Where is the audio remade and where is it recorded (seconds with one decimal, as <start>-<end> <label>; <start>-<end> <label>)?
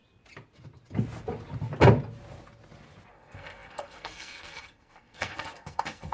0.0-3.1 recorded; 3.1-6.1 remade